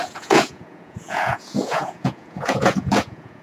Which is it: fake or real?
fake